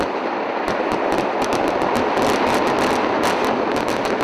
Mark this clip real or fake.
real